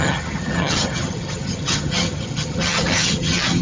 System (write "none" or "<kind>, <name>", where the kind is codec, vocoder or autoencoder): vocoder, HiFi-GAN